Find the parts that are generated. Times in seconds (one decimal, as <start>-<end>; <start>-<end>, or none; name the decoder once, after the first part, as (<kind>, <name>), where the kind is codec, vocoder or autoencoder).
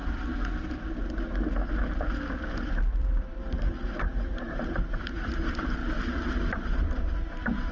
2.5-5.8 (vocoder, BigVGAN v2); 6.5-7.7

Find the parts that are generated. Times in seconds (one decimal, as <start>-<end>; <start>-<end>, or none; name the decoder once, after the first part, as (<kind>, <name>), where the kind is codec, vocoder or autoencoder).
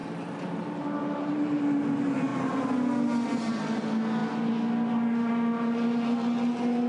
0.0-1.6 (vocoder, BigVGAN v2)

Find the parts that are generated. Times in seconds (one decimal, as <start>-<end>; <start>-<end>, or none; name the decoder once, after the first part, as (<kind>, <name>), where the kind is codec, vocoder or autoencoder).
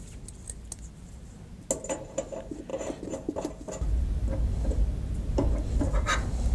none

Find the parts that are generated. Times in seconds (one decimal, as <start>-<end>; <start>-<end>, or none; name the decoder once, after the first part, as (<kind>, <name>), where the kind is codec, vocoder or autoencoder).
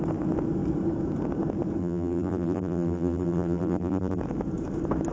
1.8-4.2 (vocoder, BigVGAN v2)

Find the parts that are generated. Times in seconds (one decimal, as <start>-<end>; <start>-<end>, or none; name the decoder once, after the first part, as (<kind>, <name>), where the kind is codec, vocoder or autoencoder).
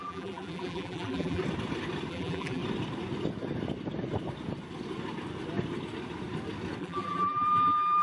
0.0-1.4 (vocoder, BigVGAN v2); 2.1-2.6; 6.8-8.0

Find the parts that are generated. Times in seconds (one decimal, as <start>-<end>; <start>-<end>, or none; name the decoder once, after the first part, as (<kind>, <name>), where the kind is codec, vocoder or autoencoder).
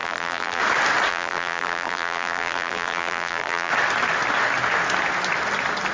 0.0-0.6 (vocoder, BigVGAN v2); 1.1-3.7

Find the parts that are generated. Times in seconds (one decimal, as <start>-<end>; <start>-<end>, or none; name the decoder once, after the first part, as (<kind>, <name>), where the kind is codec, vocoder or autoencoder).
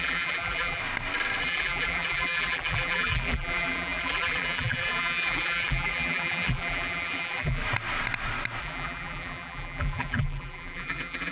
0.0-0.8 (vocoder, BigVGAN v2); 1.4-7.6; 8.6-11.3